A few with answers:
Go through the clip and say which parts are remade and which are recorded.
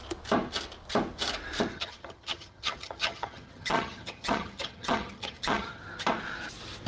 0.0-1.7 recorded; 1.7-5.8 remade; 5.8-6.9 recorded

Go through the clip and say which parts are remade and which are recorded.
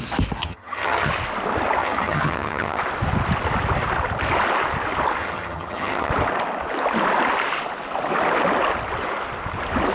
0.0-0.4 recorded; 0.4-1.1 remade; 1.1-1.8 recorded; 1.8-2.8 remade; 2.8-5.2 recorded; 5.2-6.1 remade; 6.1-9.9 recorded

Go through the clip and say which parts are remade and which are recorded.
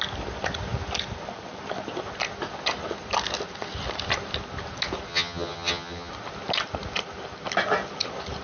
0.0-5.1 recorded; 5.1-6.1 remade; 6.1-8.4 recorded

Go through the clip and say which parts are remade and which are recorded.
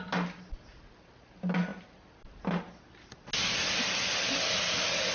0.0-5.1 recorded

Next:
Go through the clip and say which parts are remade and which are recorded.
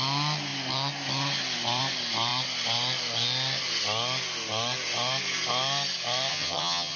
0.0-6.3 recorded; 6.3-7.0 remade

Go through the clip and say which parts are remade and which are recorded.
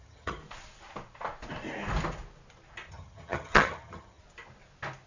0.0-0.4 remade; 0.4-2.9 recorded; 2.9-4.2 remade; 4.2-5.1 recorded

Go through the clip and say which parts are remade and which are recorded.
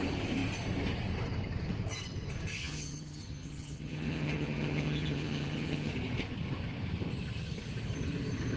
0.0-2.6 recorded; 2.6-5.9 remade; 5.9-8.6 recorded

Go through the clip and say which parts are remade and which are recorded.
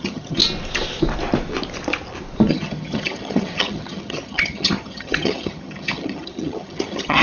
0.0-0.4 remade; 0.4-2.5 recorded; 2.5-7.2 remade